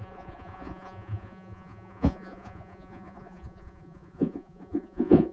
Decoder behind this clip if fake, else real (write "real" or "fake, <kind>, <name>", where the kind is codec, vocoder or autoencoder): fake, vocoder, Vocos